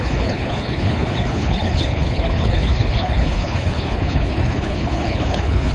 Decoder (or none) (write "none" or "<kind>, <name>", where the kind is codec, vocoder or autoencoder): codec, HILCodec